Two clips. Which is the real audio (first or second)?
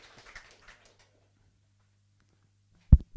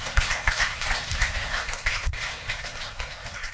first